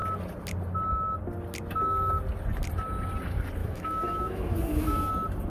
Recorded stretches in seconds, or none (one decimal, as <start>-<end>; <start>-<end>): 0.0-3.6; 5.1-5.5

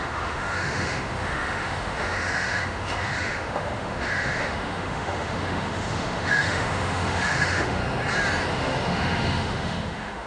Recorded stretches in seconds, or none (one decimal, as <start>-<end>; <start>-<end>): 7.8-8.5

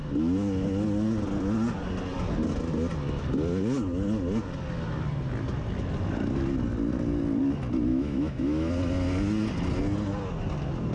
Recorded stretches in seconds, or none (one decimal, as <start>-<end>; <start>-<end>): 0.0-7.9; 8.7-10.9

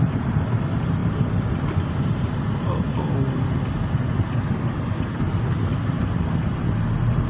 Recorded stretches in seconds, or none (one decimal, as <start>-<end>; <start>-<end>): 0.0-7.3

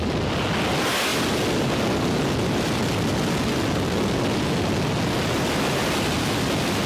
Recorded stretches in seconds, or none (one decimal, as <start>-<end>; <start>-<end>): 0.0-6.9